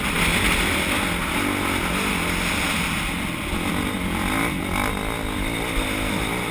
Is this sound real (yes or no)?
yes